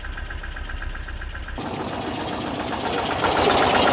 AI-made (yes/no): no